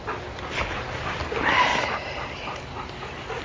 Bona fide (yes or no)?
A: yes